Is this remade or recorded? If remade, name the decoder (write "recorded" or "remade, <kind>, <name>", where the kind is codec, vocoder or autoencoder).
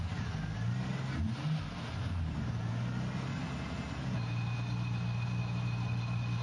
recorded